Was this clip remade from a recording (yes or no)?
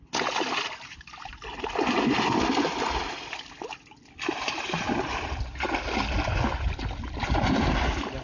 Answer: no